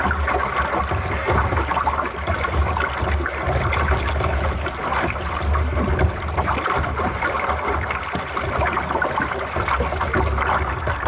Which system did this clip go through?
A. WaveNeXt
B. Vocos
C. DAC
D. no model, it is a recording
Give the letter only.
D